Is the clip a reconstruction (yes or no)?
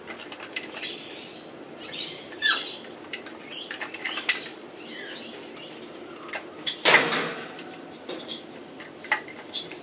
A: yes